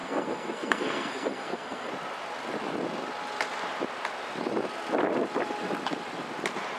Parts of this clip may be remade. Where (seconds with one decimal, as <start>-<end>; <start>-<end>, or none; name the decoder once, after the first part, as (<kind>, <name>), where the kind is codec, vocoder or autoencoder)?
0.0-1.9 (codec, SNAC)